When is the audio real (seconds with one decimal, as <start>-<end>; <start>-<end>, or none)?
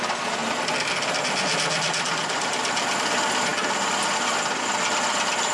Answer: 0.0-5.5